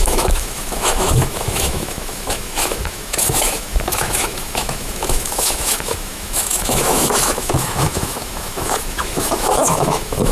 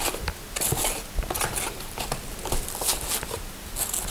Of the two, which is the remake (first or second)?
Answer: first